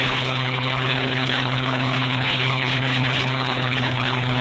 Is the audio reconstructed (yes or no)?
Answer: yes